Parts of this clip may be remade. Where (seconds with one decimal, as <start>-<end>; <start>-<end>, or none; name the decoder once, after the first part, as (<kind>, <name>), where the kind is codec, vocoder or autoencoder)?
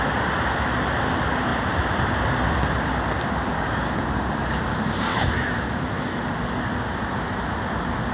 5.1-6.2 (autoencoder, DAC-VAE)